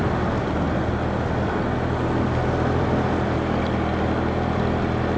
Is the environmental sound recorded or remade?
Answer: recorded